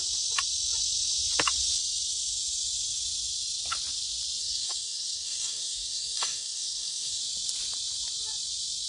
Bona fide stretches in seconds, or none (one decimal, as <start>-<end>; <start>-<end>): 0.0-4.4; 7.2-8.9